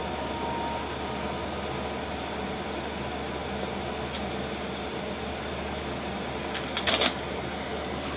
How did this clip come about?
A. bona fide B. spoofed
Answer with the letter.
A